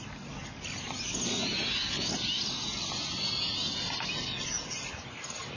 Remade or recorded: recorded